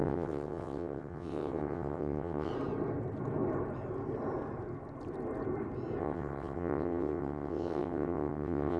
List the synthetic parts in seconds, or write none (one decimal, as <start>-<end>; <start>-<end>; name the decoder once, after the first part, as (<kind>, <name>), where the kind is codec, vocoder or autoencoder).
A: 0.0-2.5 (vocoder, WaveNeXt); 6.0-8.8